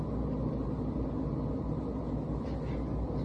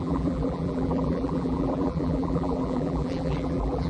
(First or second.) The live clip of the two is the first